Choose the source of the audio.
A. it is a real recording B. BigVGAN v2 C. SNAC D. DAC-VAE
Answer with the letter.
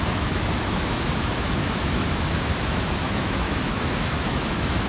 D